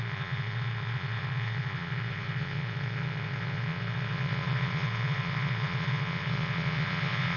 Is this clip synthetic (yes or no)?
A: yes